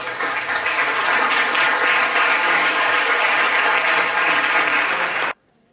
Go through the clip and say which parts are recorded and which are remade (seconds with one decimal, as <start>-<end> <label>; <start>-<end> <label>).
0.0-1.0 remade; 1.0-2.1 recorded; 2.1-3.5 remade; 3.5-4.7 recorded; 4.7-5.3 remade; 5.3-5.7 recorded